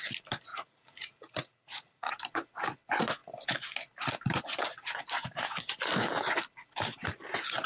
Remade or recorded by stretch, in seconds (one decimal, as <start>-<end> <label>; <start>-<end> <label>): 0.0-0.5 recorded; 0.5-2.1 remade; 2.1-7.7 recorded

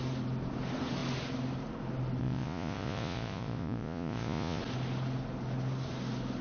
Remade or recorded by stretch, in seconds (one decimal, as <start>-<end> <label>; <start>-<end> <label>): 0.0-2.2 recorded; 2.2-4.6 remade; 4.6-6.4 recorded

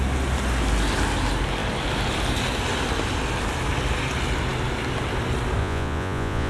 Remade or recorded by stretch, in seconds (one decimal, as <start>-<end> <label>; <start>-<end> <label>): 0.0-5.6 recorded; 5.6-6.5 remade

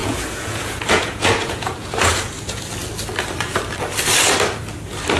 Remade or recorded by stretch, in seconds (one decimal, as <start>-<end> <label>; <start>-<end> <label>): 0.0-2.6 remade; 2.6-5.2 recorded